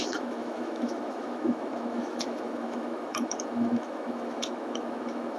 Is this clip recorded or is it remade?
remade